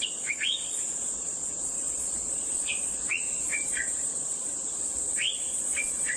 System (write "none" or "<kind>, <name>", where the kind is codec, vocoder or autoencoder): vocoder, Vocos